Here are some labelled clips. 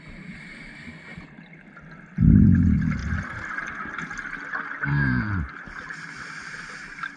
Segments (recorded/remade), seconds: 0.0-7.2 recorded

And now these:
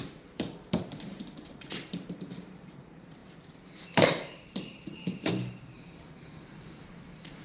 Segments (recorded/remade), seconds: 0.0-7.4 remade